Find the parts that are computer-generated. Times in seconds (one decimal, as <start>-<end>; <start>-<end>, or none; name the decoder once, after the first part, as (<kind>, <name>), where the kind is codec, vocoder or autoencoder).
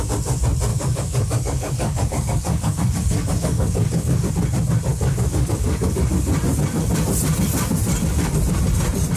0.7-4.3 (codec, DAC); 4.9-6.0